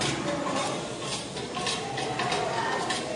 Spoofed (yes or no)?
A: no